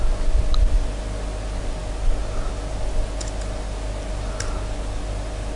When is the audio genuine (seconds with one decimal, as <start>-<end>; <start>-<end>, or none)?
0.0-5.6